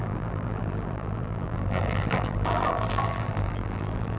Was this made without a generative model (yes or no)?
no